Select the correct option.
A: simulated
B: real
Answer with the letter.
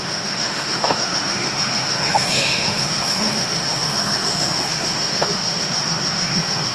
A